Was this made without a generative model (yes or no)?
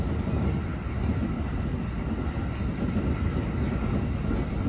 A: yes